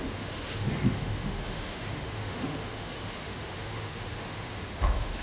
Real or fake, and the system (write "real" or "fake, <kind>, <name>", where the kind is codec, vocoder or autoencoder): fake, autoencoder, DAC-VAE